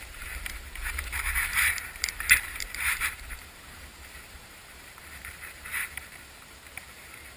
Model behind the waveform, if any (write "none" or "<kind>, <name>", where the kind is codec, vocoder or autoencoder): vocoder, BigVGAN v2